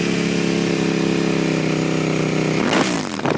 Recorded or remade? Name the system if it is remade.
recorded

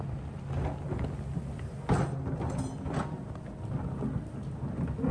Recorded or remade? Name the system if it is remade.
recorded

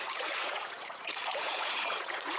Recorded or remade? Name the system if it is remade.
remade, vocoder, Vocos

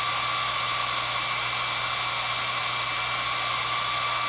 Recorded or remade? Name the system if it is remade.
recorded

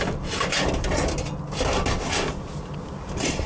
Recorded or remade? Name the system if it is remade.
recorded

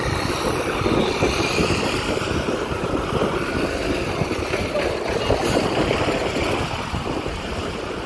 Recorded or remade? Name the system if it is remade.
recorded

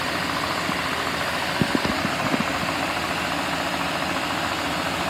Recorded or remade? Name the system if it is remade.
recorded